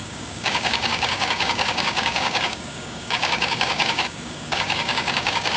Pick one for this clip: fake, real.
fake